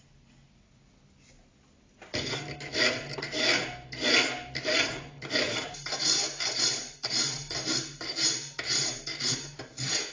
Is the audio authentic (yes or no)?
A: yes